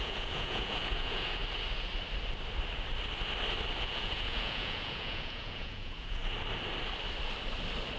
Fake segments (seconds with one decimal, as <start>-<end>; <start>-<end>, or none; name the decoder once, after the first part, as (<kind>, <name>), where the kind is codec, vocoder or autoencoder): 0.0-1.4 (vocoder, Vocos); 3.8-6.2